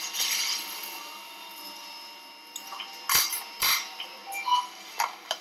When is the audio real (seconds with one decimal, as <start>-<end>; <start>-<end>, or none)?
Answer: 0.8-3.3; 4.2-4.9